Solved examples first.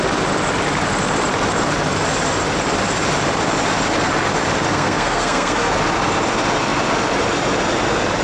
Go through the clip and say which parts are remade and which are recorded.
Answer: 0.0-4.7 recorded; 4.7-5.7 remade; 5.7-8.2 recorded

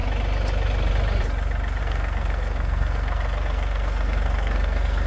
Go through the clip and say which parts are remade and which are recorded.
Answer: 0.0-1.8 recorded; 1.8-5.1 remade

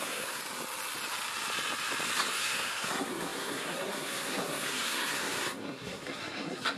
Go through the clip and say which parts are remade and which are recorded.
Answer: 0.0-0.4 remade; 0.4-2.3 recorded; 2.3-6.8 remade